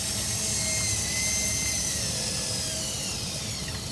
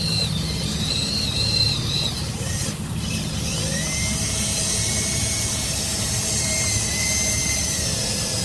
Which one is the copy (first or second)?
second